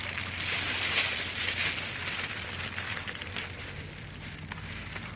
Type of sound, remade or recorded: recorded